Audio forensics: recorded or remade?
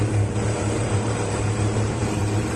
remade